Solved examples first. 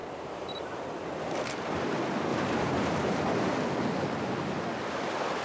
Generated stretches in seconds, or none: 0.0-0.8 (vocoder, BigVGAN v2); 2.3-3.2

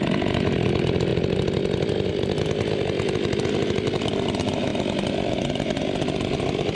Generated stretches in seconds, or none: none

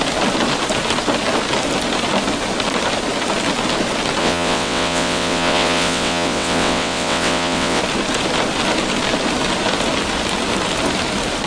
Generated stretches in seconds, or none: 4.2-7.8 (vocoder, WaveNeXt)

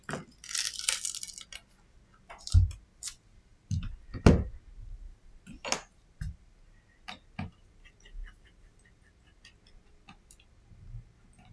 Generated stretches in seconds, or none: none